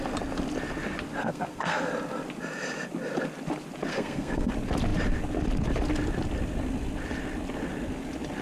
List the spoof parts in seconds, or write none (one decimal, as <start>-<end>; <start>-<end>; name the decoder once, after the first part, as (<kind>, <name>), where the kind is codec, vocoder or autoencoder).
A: 1.2-1.9 (codec, SNAC); 3.9-4.5